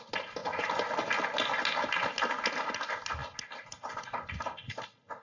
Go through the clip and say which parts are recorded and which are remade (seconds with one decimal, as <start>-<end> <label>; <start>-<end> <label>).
0.0-5.2 recorded